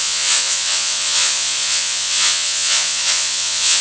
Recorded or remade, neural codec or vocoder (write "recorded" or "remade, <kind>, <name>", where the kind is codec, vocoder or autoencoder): remade, vocoder, Vocos